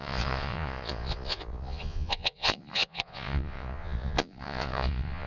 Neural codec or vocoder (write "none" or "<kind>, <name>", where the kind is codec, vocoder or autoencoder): vocoder, Vocos